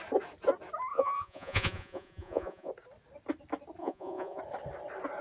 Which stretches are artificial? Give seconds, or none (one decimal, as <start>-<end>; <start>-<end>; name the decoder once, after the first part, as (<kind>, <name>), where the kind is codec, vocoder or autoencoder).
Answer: 0.9-2.7 (vocoder, Vocos); 3.8-4.4